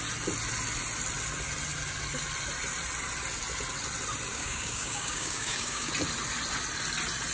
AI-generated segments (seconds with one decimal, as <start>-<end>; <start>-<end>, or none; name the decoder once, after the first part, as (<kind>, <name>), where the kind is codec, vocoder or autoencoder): 4.3-5.9 (codec, DAC)